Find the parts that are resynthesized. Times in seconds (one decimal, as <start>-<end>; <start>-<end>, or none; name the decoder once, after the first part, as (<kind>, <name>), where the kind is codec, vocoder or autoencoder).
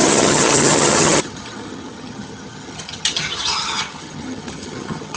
0.0-5.2 (vocoder, HiFi-GAN)